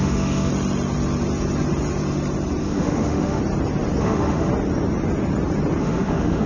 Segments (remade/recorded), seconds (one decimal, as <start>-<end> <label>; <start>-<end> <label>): 0.0-0.5 remade; 0.5-2.6 recorded; 2.6-3.4 remade; 3.4-4.0 recorded; 4.0-4.5 remade; 4.5-5.8 recorded; 5.8-6.5 remade